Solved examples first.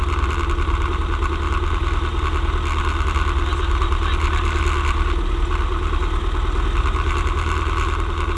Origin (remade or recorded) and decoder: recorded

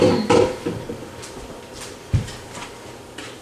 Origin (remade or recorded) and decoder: recorded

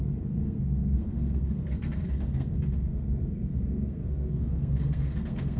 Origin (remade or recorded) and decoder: remade, codec, SNAC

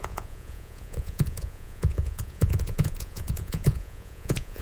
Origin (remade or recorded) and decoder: remade, vocoder, Vocos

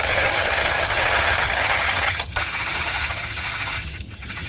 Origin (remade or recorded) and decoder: remade, vocoder, HiFi-GAN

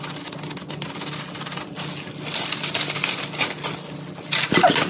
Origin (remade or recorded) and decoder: recorded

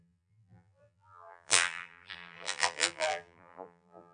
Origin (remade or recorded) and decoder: remade, vocoder, BigVGAN v2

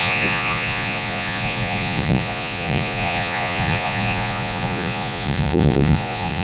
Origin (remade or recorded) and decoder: remade, vocoder, Vocos